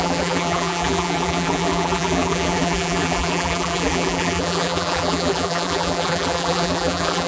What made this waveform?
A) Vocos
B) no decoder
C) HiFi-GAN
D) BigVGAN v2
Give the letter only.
D